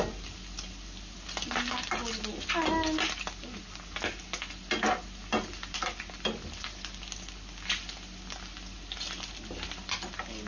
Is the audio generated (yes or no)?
no